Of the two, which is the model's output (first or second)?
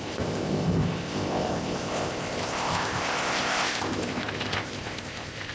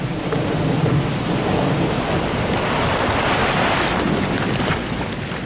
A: first